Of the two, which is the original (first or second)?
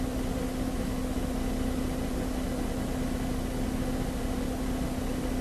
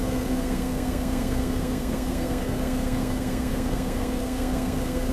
first